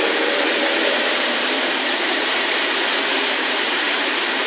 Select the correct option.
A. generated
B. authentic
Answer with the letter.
A